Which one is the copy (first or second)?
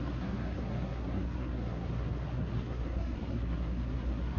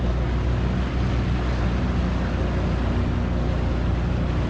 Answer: first